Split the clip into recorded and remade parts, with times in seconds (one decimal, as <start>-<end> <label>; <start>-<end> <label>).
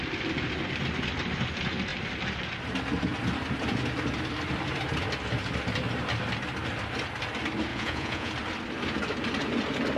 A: 0.0-7.7 recorded; 7.7-8.3 remade; 8.3-10.0 recorded